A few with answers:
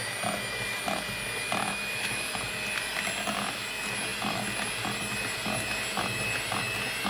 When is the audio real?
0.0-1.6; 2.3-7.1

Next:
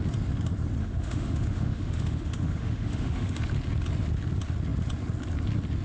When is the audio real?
0.0-0.8; 3.4-5.8

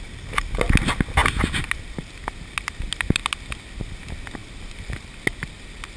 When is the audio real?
0.0-6.0